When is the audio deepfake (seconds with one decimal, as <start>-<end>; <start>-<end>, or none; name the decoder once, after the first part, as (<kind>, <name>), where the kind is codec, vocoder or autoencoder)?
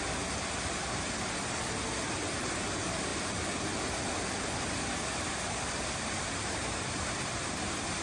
none